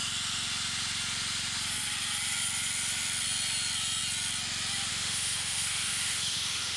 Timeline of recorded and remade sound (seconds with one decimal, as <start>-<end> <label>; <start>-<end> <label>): 0.0-4.9 recorded; 4.9-6.8 remade